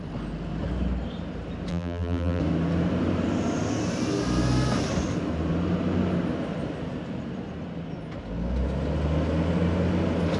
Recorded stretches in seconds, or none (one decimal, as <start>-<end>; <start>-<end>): 0.0-1.7; 2.4-10.4